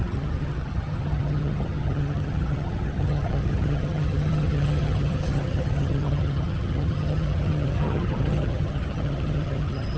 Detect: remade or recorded remade